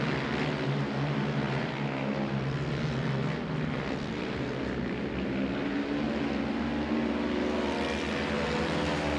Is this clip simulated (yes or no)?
no